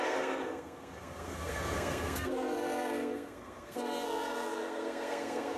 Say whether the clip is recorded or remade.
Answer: remade